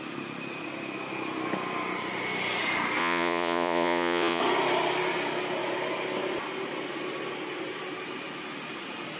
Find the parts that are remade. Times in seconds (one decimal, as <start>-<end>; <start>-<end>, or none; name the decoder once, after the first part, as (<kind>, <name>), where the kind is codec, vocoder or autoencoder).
3.0-4.4 (vocoder, Vocos)